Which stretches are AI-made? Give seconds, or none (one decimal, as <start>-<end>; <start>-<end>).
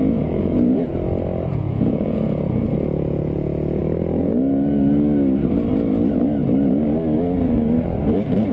0.0-0.9; 1.5-3.8